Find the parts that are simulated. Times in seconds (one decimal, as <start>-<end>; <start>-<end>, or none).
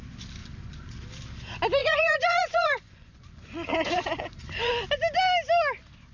0.4-0.9; 1.8-4.7